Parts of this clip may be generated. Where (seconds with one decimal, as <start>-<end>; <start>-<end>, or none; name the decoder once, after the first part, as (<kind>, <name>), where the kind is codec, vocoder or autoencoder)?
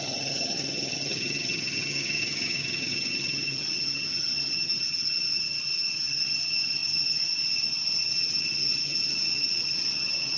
0.0-10.4 (vocoder, HiFi-GAN)